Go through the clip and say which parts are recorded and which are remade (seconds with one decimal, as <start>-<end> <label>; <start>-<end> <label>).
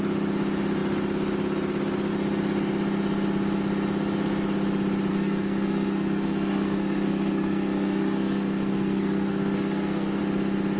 0.0-5.1 recorded; 5.1-10.2 remade; 10.2-10.8 recorded